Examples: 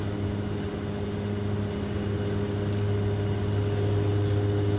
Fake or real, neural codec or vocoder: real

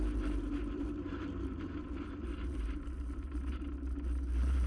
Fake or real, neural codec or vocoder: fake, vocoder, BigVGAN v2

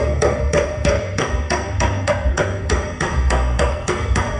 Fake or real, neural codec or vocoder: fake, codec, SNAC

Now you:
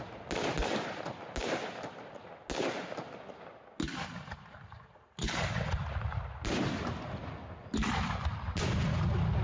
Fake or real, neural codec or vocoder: real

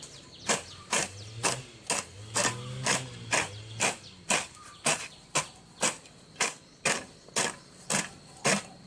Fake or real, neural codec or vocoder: real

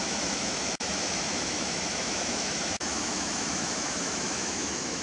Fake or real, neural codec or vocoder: fake, autoencoder, DAC-VAE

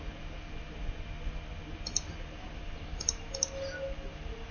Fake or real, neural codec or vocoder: real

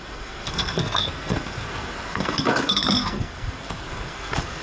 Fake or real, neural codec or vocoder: fake, codec, SNAC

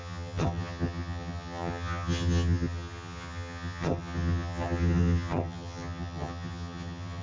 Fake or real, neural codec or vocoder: fake, vocoder, HiFi-GAN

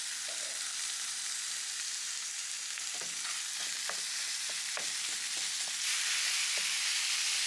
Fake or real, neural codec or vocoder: real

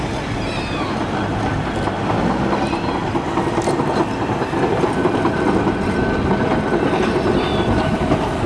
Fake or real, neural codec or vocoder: real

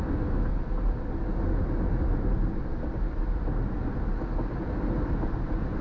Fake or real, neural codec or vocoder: real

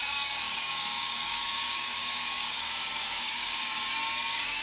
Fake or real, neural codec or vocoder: fake, codec, DAC